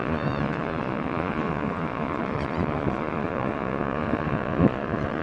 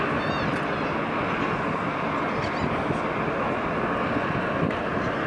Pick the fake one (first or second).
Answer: first